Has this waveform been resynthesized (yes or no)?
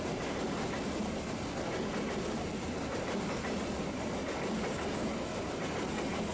no